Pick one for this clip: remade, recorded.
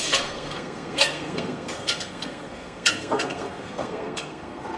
remade